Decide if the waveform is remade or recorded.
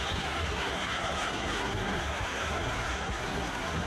remade